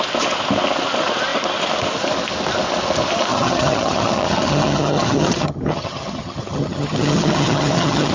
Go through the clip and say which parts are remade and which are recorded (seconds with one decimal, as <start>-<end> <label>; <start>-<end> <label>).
0.0-3.3 recorded; 3.3-8.1 remade